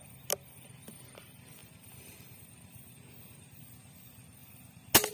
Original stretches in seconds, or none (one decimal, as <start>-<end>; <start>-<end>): 0.0-5.1